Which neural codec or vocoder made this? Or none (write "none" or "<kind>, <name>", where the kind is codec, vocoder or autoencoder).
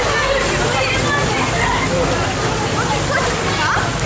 none